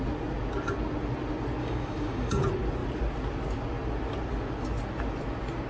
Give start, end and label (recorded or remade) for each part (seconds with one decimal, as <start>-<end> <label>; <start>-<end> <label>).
0.0-1.6 recorded; 1.6-2.3 remade; 2.3-5.7 recorded